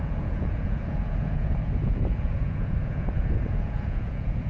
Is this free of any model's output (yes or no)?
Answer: no